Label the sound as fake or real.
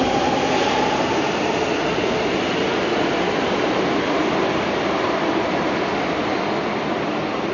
real